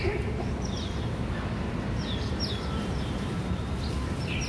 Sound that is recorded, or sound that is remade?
recorded